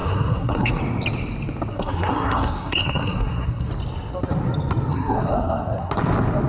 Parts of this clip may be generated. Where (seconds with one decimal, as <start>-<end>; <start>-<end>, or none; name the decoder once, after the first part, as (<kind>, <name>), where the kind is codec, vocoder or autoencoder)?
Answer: 0.0-0.8 (codec, SNAC); 1.7-3.7; 4.9-5.9